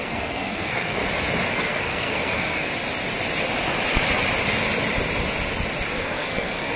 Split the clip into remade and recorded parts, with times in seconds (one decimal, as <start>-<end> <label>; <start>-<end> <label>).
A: 0.0-1.0 remade; 1.0-1.5 recorded; 1.5-2.7 remade; 2.7-5.9 recorded; 5.9-6.8 remade